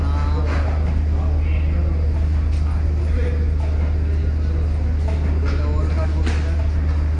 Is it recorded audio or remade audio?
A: recorded